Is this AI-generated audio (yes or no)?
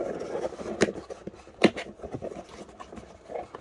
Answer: no